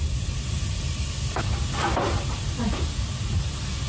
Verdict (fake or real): real